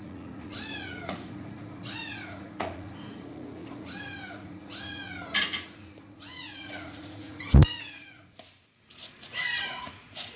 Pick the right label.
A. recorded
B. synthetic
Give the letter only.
B